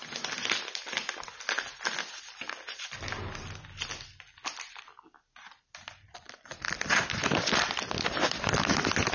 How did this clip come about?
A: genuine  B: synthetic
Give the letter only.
A